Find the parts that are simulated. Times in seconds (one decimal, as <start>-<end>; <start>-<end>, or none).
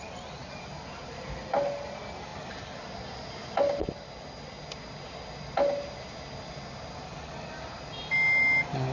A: none